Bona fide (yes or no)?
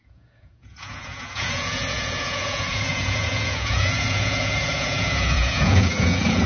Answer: no